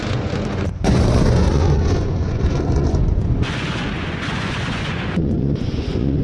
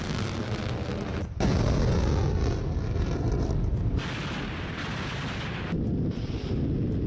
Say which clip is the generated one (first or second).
first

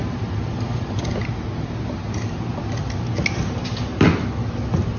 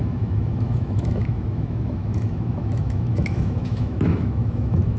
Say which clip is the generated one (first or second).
second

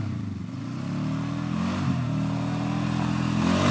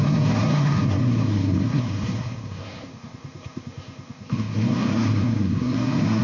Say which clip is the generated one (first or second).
second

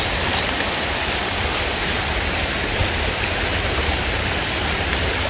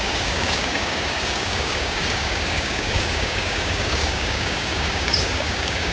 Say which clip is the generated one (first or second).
second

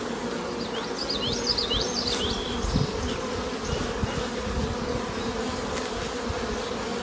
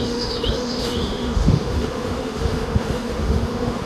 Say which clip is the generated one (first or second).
second